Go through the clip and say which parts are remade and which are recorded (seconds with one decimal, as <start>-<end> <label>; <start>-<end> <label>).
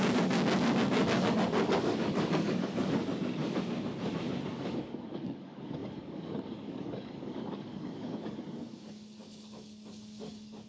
0.0-3.0 remade; 3.0-4.5 recorded; 4.5-10.7 remade